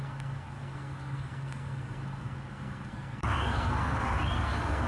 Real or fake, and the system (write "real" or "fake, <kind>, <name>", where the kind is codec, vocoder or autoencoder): fake, codec, SNAC